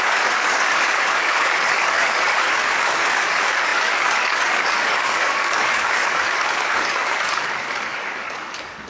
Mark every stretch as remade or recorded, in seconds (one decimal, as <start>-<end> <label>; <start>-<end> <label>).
0.0-8.9 remade